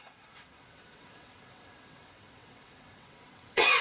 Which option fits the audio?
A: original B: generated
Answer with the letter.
B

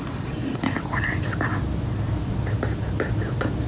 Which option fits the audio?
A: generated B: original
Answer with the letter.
B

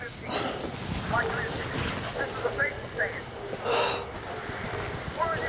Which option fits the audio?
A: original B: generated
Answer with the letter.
A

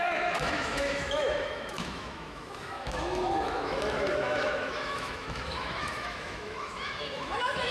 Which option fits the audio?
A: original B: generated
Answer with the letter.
B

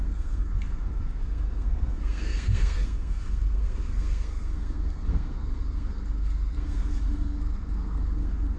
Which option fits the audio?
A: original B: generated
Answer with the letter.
B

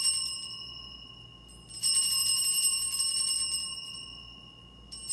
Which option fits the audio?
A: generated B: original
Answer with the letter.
B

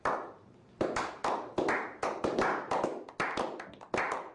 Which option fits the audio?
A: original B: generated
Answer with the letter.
A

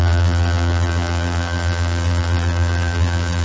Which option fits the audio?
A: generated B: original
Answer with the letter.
A